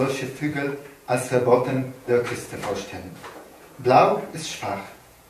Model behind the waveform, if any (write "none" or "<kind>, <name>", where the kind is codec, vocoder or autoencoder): vocoder, Vocos